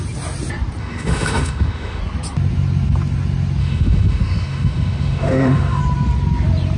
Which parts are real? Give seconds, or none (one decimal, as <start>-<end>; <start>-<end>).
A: 0.0-0.8; 2.0-3.6; 5.8-6.8